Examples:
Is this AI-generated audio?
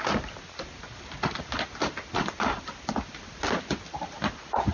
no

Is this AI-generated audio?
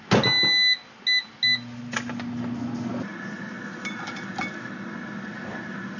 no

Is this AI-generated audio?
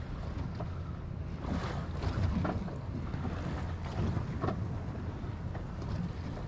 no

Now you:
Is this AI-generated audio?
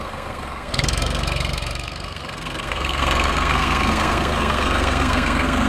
yes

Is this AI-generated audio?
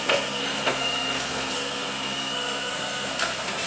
yes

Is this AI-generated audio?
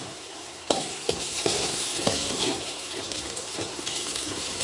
yes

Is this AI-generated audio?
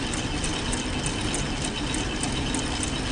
no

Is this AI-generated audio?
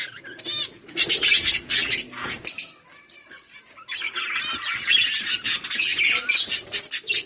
no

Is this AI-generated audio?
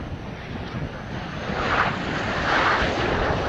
no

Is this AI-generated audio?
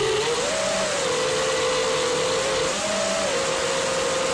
no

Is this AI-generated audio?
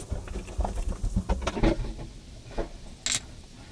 no